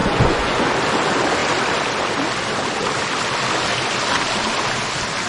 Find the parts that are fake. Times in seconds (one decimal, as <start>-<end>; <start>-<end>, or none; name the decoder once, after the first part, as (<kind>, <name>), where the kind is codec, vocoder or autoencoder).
0.0-0.7 (vocoder, Vocos)